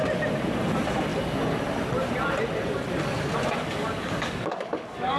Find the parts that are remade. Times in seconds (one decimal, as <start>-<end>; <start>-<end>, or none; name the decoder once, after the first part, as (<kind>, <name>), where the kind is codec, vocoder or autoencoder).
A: 3.6-5.2 (codec, DAC)